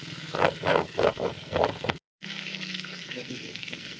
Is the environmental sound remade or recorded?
remade